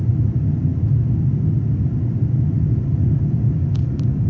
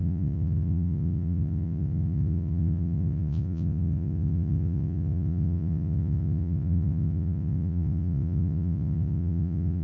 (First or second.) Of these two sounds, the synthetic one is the second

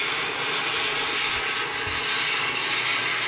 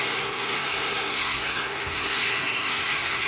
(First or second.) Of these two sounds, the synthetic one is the second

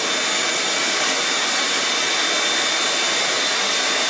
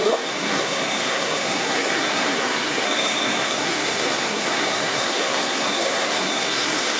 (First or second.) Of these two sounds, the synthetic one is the second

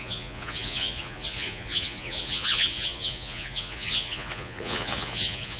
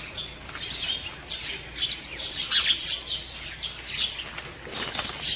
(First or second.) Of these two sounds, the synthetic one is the first